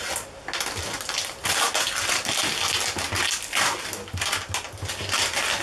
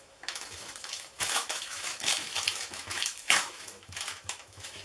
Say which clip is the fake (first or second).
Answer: second